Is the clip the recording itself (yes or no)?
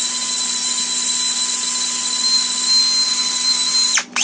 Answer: yes